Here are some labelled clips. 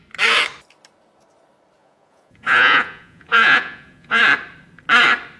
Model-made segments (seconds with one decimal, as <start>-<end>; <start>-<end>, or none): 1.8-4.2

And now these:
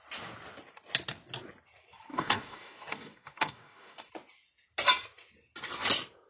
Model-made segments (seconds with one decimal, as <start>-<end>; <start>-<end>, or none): 2.1-4.1

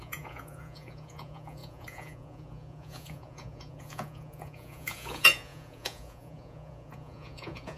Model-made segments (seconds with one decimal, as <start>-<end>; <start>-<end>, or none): 0.0-7.8

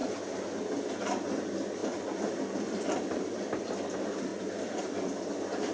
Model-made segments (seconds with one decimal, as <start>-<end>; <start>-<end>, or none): 1.4-4.3; 4.8-5.7